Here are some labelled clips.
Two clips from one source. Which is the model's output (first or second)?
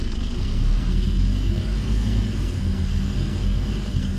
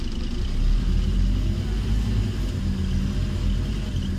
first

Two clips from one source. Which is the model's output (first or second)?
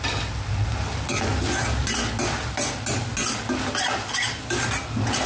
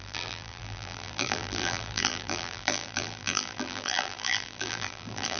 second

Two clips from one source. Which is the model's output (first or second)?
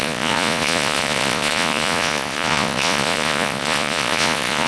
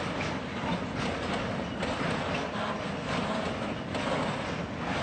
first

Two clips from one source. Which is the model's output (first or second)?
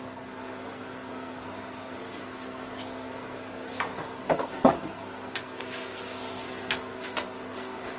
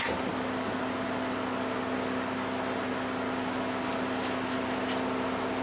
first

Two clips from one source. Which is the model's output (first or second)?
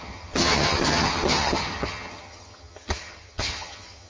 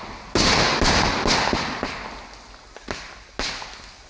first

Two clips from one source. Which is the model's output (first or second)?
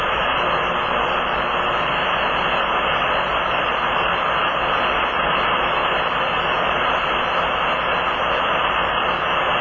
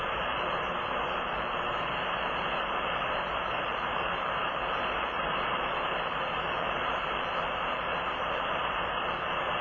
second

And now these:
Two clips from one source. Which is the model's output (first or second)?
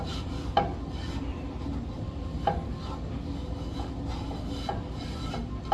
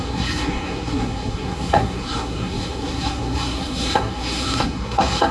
second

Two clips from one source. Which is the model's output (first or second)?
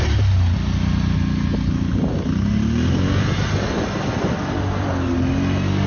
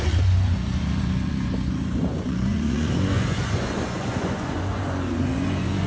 second